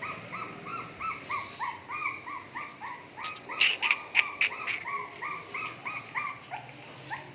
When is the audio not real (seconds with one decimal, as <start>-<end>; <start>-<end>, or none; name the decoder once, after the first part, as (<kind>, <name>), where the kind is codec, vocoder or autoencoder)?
none